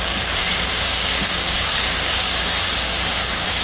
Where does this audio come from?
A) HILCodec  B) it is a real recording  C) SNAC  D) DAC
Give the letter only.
D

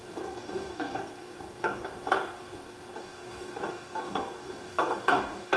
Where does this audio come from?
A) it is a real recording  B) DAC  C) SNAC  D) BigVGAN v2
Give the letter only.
B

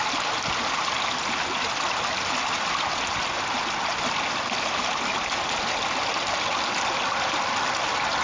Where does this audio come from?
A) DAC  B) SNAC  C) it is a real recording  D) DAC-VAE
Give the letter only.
C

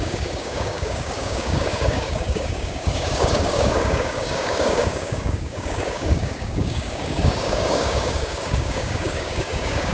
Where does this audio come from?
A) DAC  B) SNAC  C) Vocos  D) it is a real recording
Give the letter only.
A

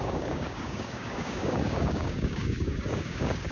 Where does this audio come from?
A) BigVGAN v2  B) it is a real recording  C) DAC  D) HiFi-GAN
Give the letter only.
C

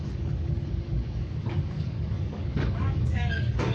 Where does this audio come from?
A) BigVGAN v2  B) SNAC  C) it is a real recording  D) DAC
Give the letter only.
D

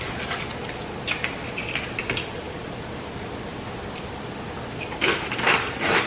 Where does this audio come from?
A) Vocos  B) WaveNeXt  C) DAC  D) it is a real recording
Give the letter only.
D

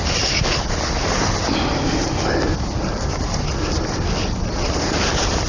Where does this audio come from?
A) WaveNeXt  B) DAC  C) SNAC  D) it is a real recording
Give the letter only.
D